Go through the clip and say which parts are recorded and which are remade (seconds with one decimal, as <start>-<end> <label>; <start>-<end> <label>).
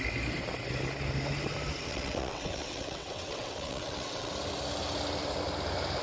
0.0-1.9 recorded; 1.9-4.3 remade; 4.3-6.0 recorded